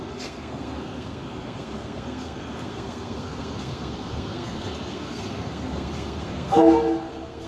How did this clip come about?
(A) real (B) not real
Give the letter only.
B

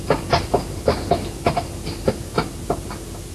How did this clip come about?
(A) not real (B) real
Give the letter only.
B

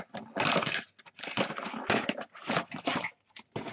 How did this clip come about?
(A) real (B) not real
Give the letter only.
A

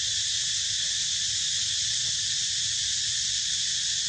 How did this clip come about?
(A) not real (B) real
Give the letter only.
B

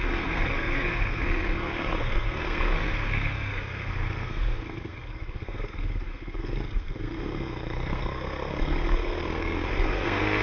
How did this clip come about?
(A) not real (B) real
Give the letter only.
A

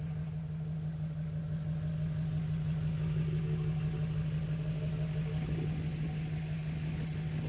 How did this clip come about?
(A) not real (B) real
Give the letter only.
B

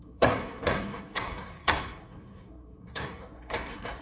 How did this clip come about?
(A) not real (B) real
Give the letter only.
A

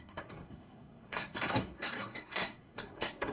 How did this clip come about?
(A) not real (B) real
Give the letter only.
A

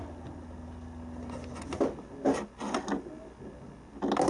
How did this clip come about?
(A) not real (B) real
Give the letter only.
B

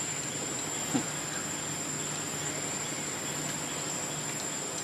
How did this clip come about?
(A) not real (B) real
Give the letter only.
B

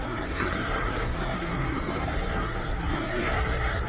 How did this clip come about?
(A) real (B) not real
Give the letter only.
B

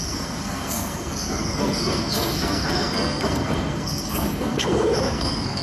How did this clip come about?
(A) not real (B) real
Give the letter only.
A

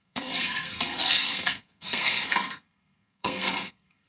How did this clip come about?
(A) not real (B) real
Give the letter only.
A